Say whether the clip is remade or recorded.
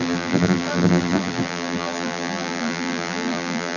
remade